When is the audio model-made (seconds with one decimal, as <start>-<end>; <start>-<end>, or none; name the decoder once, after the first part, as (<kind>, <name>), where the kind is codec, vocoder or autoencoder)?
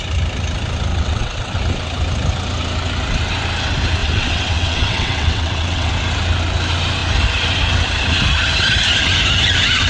0.9-1.6 (vocoder, WaveNeXt); 4.0-5.9